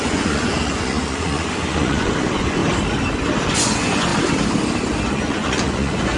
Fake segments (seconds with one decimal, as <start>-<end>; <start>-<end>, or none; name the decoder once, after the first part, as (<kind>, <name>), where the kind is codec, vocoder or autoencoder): 0.0-2.6 (vocoder, Vocos); 3.5-4.1; 5.1-6.2